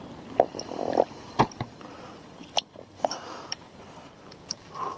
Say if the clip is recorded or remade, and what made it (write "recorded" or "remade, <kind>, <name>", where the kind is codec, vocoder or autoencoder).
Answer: remade, vocoder, BigVGAN v2